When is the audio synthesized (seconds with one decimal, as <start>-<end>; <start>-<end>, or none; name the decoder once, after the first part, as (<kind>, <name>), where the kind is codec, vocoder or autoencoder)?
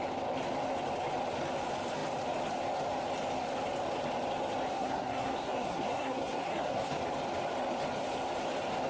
4.7-6.9 (codec, SNAC)